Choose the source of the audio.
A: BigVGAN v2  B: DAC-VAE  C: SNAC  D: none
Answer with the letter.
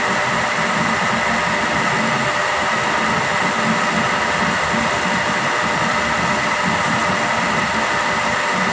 D